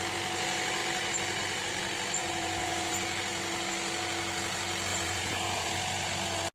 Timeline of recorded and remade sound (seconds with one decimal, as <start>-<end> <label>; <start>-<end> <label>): 0.0-2.2 recorded; 2.2-2.9 remade; 2.9-4.9 recorded; 4.9-5.7 remade; 5.7-6.5 recorded